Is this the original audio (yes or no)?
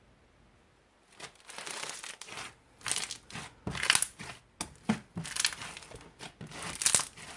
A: yes